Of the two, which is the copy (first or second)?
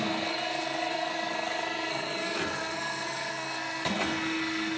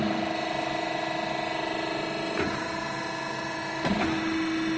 first